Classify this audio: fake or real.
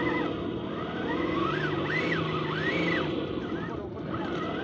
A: real